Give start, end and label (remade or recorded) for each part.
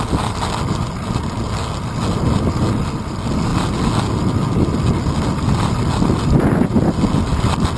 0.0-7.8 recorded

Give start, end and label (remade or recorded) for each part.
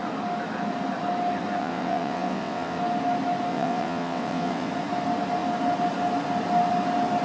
0.0-1.6 recorded; 1.6-2.8 remade; 2.8-3.5 recorded; 3.5-4.7 remade; 4.7-7.2 recorded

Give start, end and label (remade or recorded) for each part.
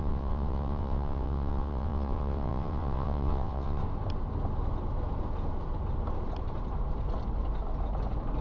0.0-3.8 remade; 3.8-8.4 recorded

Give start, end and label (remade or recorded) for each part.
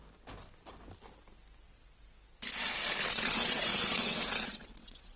0.0-3.1 recorded; 3.1-5.2 remade